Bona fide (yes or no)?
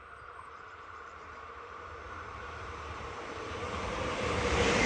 no